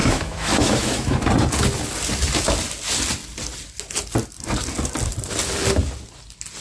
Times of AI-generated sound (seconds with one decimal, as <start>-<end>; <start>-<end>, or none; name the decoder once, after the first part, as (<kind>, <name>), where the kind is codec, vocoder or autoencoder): 0.0-1.2 (autoencoder, DAC-VAE)